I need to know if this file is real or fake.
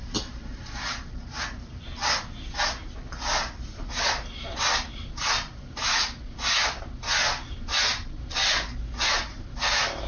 real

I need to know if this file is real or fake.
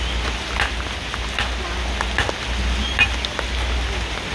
real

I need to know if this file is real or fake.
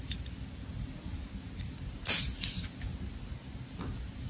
real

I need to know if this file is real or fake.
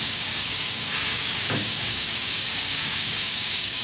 fake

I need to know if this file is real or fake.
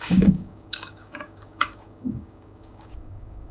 fake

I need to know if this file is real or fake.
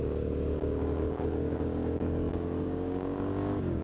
fake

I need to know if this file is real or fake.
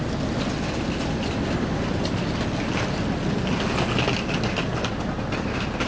real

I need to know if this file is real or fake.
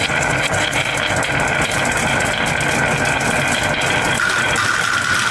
real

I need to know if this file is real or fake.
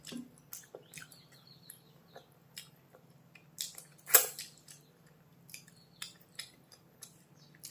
real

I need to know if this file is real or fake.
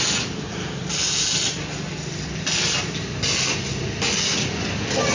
real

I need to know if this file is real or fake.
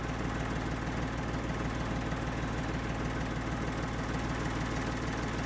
real